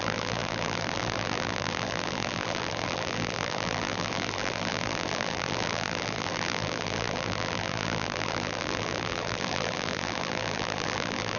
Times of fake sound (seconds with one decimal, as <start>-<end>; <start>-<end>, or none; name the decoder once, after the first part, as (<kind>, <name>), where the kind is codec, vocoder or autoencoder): 0.0-11.4 (vocoder, BigVGAN v2)